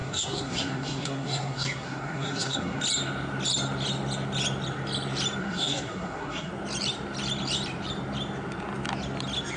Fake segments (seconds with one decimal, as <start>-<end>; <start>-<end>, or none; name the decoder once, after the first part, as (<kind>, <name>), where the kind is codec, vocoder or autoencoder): 0.0-2.8 (codec, SNAC); 5.4-6.5